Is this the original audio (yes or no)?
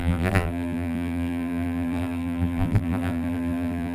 no